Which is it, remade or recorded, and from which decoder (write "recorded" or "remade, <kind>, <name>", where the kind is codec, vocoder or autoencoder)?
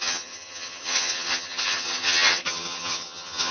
remade, vocoder, HiFi-GAN